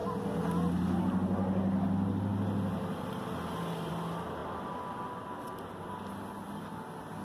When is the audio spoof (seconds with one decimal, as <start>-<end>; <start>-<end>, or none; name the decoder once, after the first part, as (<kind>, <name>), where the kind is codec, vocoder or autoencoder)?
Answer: none